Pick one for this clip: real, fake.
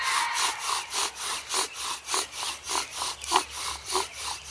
real